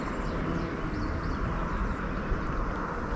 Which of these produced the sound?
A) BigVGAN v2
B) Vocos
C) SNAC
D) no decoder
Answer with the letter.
D